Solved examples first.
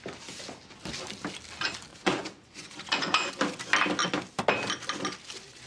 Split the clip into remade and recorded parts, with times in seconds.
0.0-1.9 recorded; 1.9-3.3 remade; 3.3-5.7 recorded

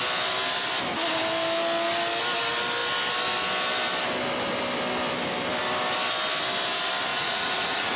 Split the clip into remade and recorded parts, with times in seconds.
0.0-7.1 recorded; 7.1-8.0 remade

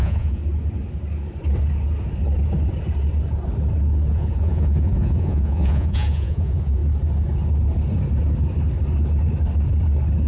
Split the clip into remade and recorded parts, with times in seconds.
0.0-0.4 remade; 0.4-4.1 recorded; 4.1-6.8 remade; 6.8-10.3 recorded

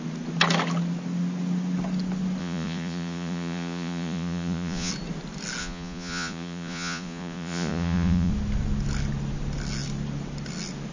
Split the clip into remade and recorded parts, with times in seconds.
0.0-2.4 recorded; 2.4-4.9 remade; 4.9-5.6 recorded; 5.6-8.3 remade; 8.3-10.9 recorded

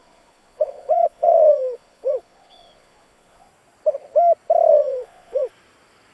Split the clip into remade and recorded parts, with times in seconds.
0.0-3.5 remade; 3.5-4.7 recorded; 4.7-5.5 remade; 5.5-6.1 recorded